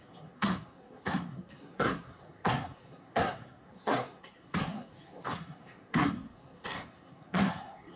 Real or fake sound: fake